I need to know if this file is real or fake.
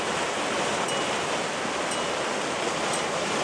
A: real